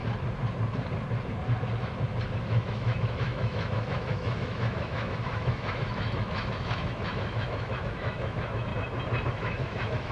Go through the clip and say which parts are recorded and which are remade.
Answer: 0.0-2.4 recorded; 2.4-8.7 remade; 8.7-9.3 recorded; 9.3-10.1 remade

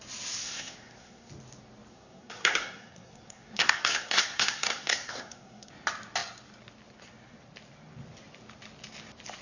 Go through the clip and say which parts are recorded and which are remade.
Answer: 0.0-0.4 recorded; 0.4-1.3 remade; 1.3-1.9 recorded; 1.9-5.7 remade; 5.7-9.4 recorded

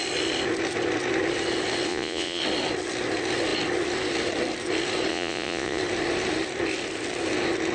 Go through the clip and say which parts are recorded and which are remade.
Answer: 0.0-1.9 recorded; 1.9-2.4 remade; 2.4-5.1 recorded; 5.1-5.8 remade; 5.8-7.7 recorded

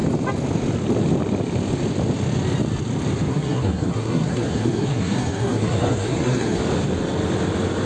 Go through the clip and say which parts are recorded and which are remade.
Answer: 0.0-3.3 recorded; 3.3-6.6 remade; 6.6-7.9 recorded

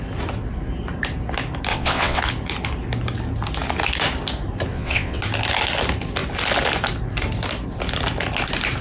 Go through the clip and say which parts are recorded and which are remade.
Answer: 0.0-1.7 recorded; 1.7-2.2 remade; 2.2-4.7 recorded; 4.7-5.2 remade; 5.2-8.8 recorded

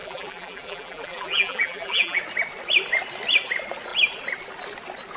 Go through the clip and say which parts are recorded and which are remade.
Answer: 0.0-2.2 remade; 2.2-5.2 recorded

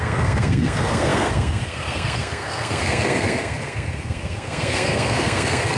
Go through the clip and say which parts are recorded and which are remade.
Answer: 0.0-5.8 remade

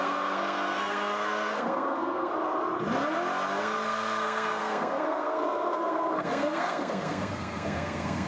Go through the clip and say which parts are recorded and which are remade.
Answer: 0.0-2.3 remade; 2.3-3.6 recorded; 3.6-8.3 remade